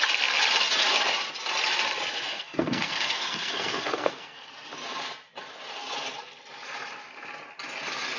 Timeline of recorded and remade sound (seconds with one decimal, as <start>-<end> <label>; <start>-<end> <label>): 0.0-2.3 recorded; 2.3-4.5 remade; 4.5-8.2 recorded